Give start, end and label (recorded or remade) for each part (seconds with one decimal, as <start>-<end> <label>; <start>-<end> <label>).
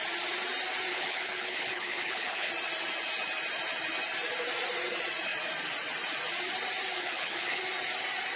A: 0.0-0.9 recorded; 0.9-2.5 remade; 2.5-7.0 recorded; 7.0-7.6 remade; 7.6-8.4 recorded